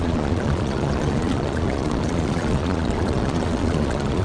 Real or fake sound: fake